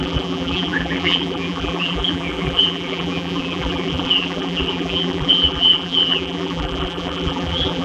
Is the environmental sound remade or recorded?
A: remade